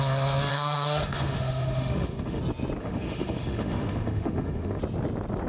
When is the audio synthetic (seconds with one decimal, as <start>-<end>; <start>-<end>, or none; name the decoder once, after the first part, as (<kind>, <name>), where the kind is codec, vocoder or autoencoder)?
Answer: 0.5-2.4 (autoencoder, DAC-VAE); 2.8-4.8

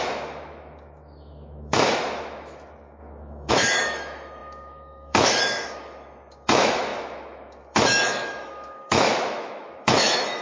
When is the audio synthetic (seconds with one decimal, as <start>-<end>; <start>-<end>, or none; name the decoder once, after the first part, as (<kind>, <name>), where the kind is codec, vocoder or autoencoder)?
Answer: 0.0-10.4 (autoencoder, DAC-VAE)